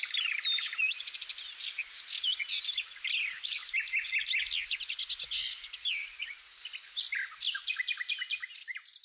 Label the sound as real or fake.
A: real